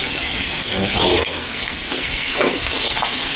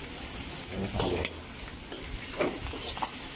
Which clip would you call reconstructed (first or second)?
first